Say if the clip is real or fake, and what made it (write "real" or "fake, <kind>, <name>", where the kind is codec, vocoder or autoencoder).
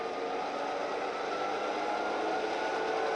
real